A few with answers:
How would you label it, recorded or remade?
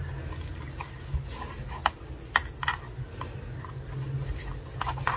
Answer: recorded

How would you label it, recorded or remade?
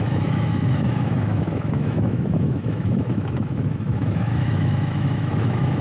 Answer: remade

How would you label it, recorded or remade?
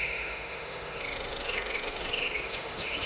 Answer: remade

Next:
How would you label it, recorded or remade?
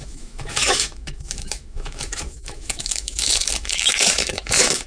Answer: remade